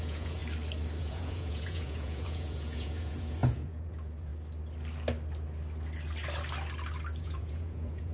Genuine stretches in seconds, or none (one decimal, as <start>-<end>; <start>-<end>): 0.4-1.0; 4.3-7.2